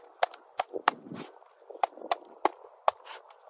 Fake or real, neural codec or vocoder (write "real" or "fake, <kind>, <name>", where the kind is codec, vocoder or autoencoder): real